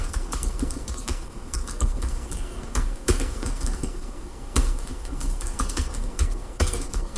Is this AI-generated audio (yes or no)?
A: yes